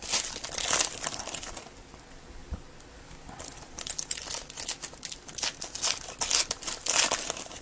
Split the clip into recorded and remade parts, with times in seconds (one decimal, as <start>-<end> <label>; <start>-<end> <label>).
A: 0.0-7.6 recorded

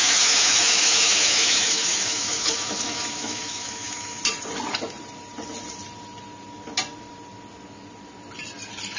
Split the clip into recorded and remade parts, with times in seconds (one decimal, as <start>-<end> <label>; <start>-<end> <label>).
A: 0.0-4.2 remade; 4.2-9.0 recorded

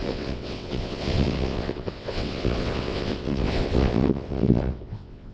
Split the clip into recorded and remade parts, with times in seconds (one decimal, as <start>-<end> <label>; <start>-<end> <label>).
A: 0.0-5.3 remade